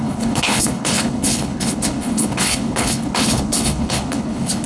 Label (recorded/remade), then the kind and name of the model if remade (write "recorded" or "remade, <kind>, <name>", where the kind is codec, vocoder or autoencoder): remade, codec, HILCodec